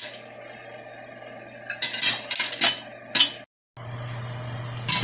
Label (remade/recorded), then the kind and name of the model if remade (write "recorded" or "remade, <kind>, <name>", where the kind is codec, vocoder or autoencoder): recorded